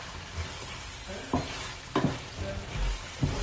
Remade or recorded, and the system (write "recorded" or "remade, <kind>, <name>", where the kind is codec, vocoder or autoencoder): recorded